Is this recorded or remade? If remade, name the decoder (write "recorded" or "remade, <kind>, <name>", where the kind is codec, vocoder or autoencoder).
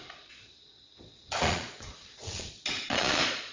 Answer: remade, vocoder, Vocos